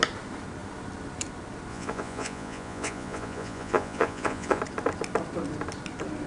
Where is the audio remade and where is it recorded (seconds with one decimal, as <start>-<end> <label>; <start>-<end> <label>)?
0.0-1.7 recorded; 1.7-4.6 remade; 4.6-6.3 recorded